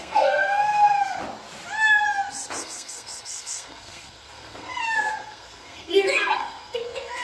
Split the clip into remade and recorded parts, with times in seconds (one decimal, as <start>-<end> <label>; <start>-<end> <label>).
0.0-1.2 remade; 1.2-2.6 recorded; 2.6-7.2 remade